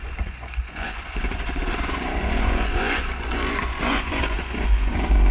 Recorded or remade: remade